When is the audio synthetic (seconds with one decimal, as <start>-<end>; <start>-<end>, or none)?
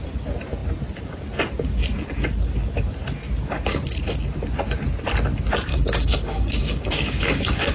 5.7-7.7